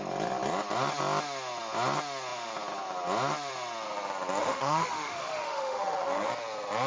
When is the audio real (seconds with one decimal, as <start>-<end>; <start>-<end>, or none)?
0.0-4.4; 6.3-6.9